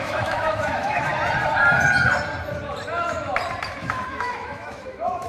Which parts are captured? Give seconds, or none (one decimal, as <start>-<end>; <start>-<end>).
1.1-3.8